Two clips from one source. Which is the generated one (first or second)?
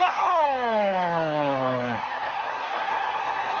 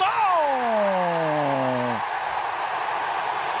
first